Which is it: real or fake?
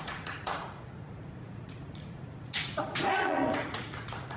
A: fake